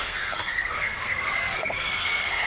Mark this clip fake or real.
fake